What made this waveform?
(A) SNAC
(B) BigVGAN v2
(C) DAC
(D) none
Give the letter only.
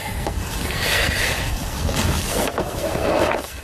A